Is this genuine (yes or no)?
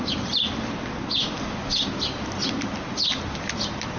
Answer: yes